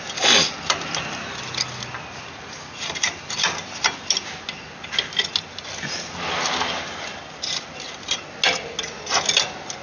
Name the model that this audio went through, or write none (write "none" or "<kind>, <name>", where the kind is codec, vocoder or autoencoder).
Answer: none